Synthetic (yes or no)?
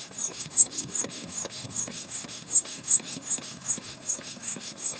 yes